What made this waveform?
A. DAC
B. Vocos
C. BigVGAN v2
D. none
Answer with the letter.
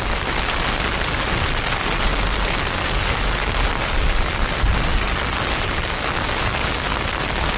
D